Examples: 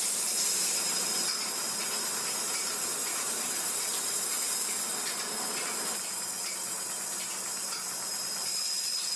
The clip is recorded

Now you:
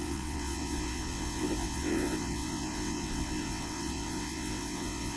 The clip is remade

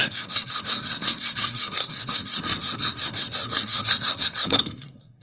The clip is remade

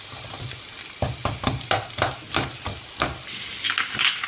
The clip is recorded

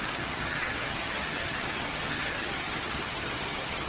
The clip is remade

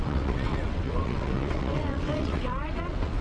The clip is remade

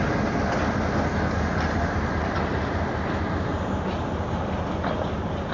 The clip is recorded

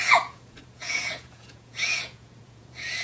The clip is remade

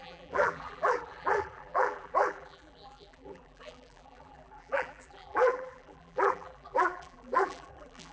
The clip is remade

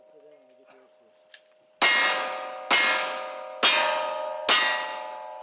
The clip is recorded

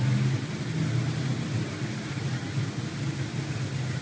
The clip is recorded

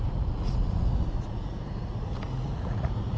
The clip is remade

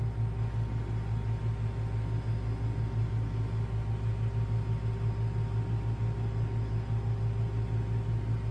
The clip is recorded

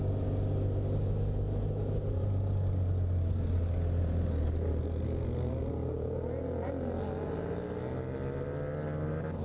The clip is recorded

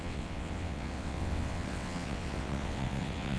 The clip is remade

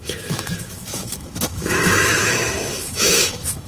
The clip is remade